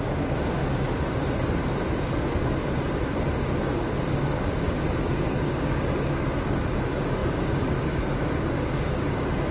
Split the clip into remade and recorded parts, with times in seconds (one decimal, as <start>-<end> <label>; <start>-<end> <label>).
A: 0.0-0.6 remade; 0.6-3.6 recorded; 3.6-9.5 remade